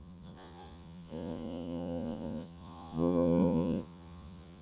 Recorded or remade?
remade